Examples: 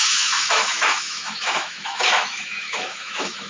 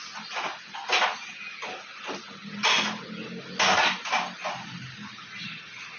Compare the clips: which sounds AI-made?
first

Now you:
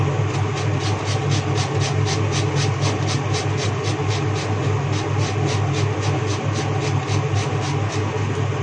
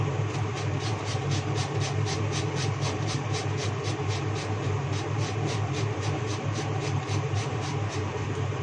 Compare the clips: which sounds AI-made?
second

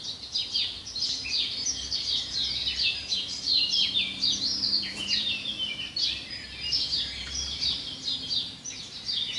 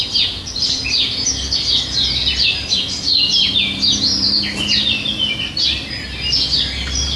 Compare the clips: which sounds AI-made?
first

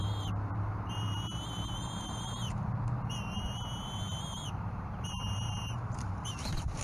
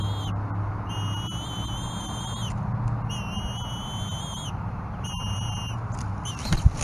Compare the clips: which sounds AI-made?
first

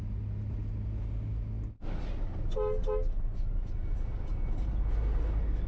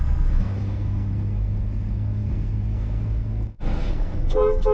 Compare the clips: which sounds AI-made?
second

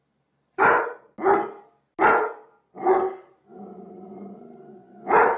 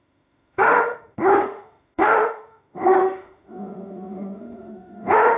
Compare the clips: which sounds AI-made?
second